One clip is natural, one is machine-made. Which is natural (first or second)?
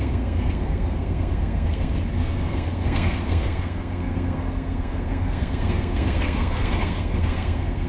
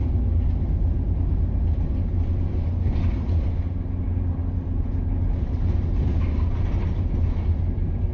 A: second